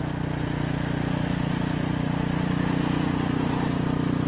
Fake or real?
real